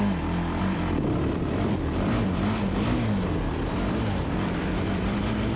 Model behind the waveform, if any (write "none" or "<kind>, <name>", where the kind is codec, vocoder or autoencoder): vocoder, BigVGAN v2